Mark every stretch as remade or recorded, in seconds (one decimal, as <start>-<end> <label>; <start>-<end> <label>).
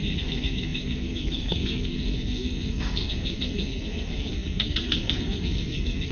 0.0-6.1 remade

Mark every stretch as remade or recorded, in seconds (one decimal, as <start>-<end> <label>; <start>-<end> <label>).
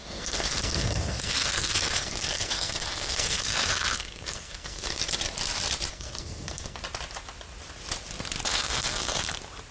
0.0-5.0 remade; 5.0-5.9 recorded; 5.9-6.8 remade; 6.8-8.5 recorded; 8.5-9.2 remade; 9.2-9.7 recorded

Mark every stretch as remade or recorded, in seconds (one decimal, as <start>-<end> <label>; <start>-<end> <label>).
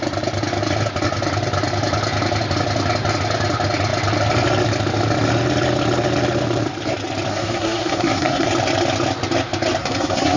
0.0-7.3 recorded; 7.3-8.5 remade; 8.5-9.8 recorded; 9.8-10.4 remade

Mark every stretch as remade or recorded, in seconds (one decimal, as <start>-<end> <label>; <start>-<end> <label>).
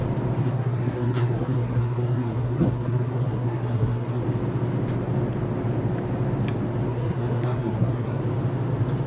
0.0-0.4 recorded; 0.4-4.2 remade; 4.2-6.9 recorded; 6.9-8.2 remade; 8.2-9.1 recorded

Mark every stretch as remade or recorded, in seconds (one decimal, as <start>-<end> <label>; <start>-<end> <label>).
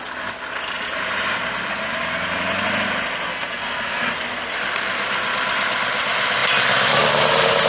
0.0-3.3 recorded; 3.3-4.1 remade; 4.1-7.7 recorded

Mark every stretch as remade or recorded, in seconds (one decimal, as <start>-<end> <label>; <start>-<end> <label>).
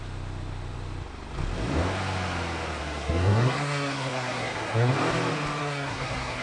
0.0-2.8 recorded; 2.8-4.9 remade; 4.9-5.6 recorded; 5.6-6.4 remade